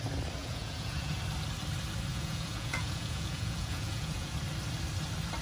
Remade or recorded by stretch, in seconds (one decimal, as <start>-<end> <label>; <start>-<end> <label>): 0.0-0.4 recorded; 0.4-1.2 remade; 1.2-2.1 recorded; 2.1-4.3 remade; 4.3-5.4 recorded